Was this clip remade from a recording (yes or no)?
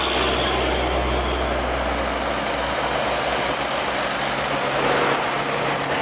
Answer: no